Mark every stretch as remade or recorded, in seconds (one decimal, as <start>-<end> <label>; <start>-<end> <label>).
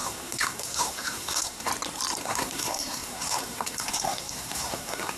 0.0-1.7 remade; 1.7-2.2 recorded; 2.2-5.2 remade